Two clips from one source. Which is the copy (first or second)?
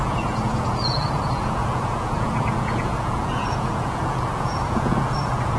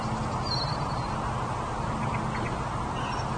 first